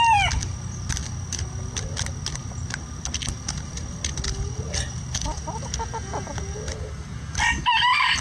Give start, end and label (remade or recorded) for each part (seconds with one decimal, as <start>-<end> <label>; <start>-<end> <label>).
0.0-8.2 recorded